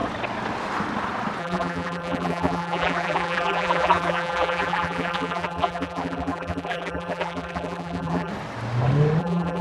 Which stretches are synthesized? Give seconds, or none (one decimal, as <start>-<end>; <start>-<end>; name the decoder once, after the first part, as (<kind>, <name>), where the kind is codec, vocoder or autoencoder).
1.4-8.3 (vocoder, BigVGAN v2); 9.2-9.6